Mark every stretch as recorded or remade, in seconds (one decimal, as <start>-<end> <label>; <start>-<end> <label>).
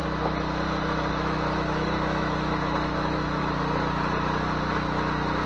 0.0-1.1 recorded; 1.1-3.4 remade; 3.4-5.5 recorded